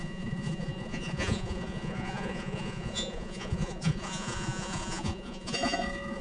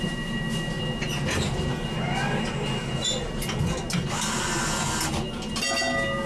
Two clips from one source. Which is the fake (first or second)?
first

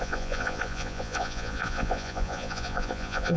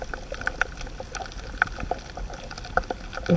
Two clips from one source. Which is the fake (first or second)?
first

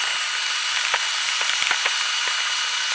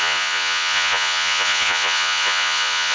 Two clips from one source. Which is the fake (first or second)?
second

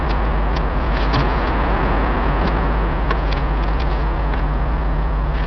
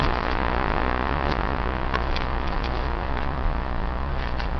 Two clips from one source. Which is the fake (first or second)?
second